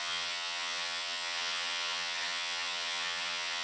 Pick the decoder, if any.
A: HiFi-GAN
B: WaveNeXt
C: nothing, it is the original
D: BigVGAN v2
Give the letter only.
A